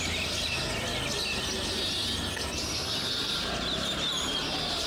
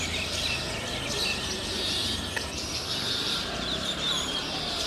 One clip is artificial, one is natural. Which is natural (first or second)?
first